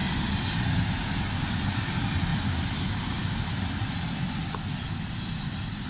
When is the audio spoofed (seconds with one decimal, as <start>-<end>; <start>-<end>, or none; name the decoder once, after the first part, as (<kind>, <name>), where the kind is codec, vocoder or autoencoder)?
none